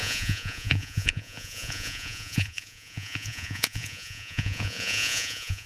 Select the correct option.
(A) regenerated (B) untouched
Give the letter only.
A